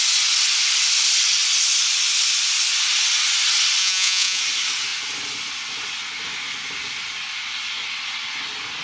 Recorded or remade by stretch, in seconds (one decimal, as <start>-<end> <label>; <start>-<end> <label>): 0.0-3.8 recorded; 3.8-4.4 remade; 4.4-8.8 recorded